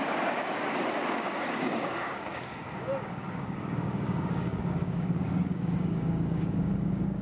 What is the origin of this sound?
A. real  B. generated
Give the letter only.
B